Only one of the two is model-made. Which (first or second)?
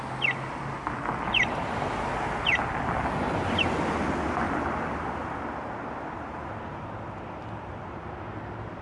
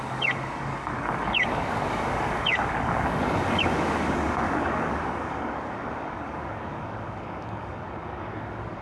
second